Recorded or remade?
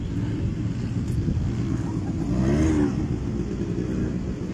recorded